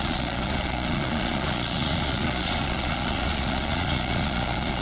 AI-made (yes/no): yes